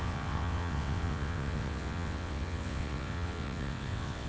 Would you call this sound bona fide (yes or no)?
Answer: no